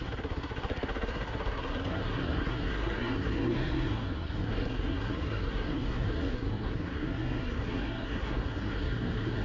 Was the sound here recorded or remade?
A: remade